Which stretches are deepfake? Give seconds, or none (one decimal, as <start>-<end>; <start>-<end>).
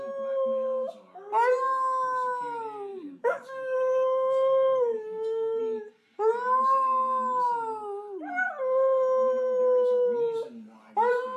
2.9-5.6